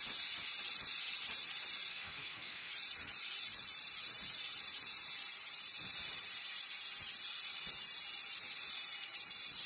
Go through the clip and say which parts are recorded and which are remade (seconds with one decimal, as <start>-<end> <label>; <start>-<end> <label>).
0.0-1.9 recorded; 1.9-2.7 remade; 2.7-9.7 recorded